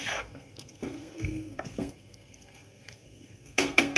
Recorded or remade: remade